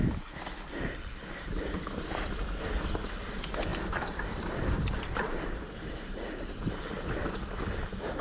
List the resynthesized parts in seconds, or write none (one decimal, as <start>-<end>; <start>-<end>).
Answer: 3.7-7.4